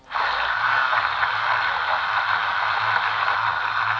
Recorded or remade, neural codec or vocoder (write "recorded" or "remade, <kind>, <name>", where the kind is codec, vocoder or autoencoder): recorded